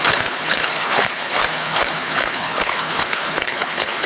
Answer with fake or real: fake